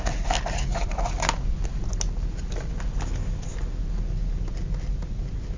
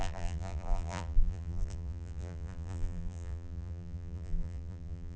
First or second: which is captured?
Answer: first